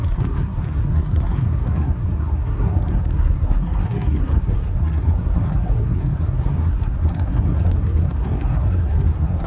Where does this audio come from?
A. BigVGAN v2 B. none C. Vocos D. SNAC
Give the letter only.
D